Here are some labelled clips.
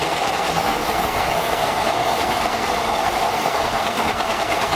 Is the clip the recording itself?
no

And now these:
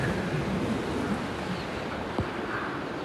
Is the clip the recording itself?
yes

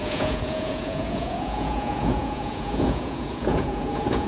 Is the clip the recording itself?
no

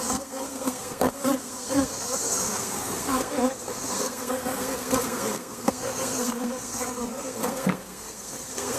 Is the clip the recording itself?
no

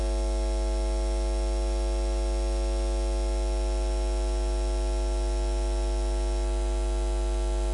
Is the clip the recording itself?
yes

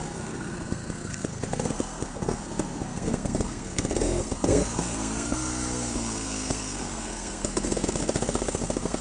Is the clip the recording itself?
no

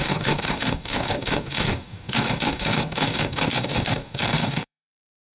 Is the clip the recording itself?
no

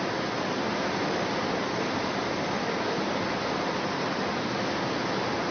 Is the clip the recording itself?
yes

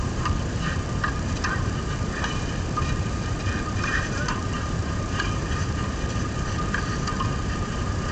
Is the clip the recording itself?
no